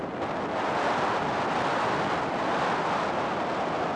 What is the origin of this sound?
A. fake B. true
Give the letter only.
B